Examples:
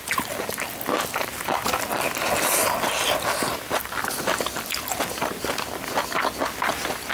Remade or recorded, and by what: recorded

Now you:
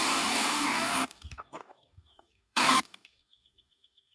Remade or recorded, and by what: remade, codec, DAC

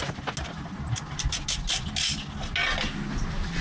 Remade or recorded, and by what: recorded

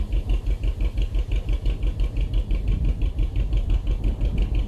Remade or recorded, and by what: recorded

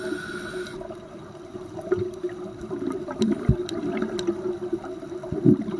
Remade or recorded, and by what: recorded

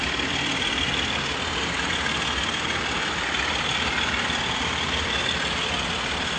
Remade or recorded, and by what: recorded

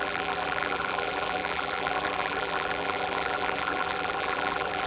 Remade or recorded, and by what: remade, vocoder, BigVGAN v2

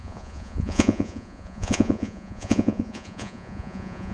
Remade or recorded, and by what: remade, vocoder, Vocos